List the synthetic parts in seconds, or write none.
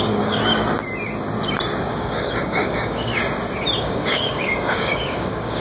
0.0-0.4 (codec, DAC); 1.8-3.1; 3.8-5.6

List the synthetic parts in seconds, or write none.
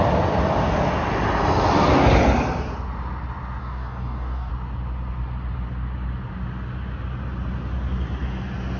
3.6-4.5 (codec, DAC)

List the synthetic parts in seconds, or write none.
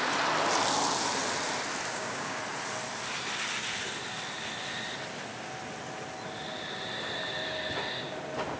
1.9-2.4 (codec, DAC)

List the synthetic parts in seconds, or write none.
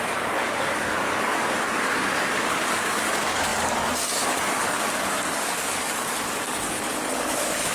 0.0-7.7 (codec, DAC)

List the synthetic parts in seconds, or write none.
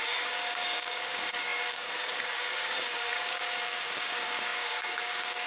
0.0-5.5 (codec, DAC)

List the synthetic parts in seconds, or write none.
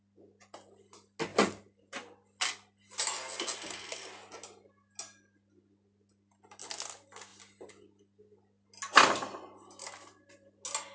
none